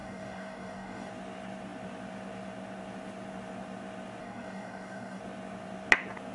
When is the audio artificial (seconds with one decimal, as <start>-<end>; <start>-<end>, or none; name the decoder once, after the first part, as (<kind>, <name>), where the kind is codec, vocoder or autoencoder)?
0.0-1.1 (codec, DAC); 4.2-5.2